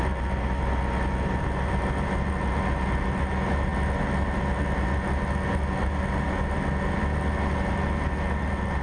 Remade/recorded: recorded